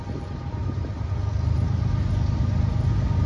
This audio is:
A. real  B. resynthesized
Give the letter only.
A